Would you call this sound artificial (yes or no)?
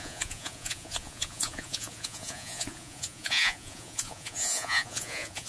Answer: yes